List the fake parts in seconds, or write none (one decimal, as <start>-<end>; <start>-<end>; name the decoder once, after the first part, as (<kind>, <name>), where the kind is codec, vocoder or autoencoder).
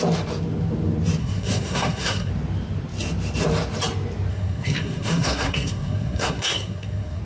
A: 1.2-2.3 (codec, SNAC); 4.3-7.2